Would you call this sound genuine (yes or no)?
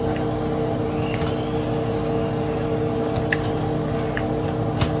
yes